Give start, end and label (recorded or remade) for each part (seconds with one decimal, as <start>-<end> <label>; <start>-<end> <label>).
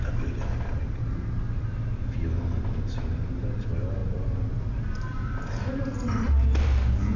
0.0-4.0 recorded; 4.0-5.6 remade; 5.6-7.2 recorded